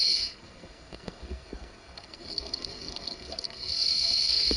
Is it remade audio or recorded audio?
remade